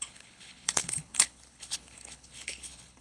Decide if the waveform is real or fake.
fake